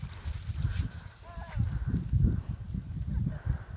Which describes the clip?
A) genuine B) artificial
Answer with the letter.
A